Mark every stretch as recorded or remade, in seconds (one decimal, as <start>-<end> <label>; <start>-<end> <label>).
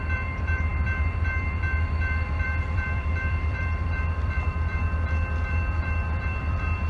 0.0-6.9 remade